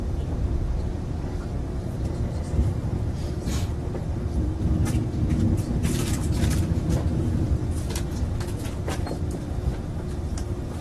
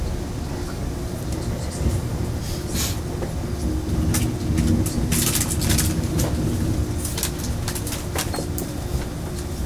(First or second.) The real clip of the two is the second